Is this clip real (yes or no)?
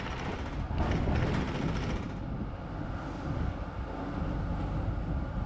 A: yes